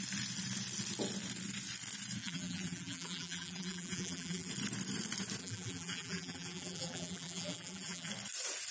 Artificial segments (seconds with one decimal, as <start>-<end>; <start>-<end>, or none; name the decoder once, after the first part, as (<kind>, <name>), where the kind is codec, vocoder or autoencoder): 2.2-4.5 (vocoder, BigVGAN v2); 5.4-8.1